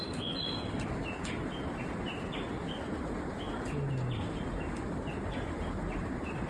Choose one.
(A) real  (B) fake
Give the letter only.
A